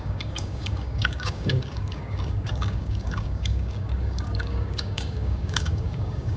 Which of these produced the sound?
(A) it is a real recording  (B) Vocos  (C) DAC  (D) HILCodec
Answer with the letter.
C